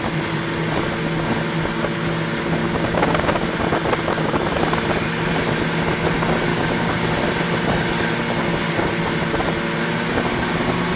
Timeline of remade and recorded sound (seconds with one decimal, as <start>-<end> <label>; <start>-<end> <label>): 0.0-2.6 recorded; 2.6-3.5 remade; 3.5-6.5 recorded; 6.5-7.1 remade; 7.1-11.0 recorded